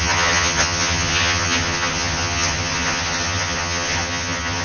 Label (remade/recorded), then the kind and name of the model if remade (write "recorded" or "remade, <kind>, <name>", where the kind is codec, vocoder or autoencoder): remade, vocoder, HiFi-GAN